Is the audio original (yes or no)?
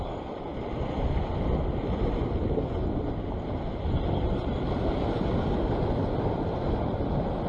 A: yes